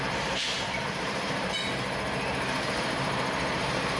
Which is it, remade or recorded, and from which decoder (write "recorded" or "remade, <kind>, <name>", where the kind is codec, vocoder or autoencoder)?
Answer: remade, vocoder, BigVGAN v2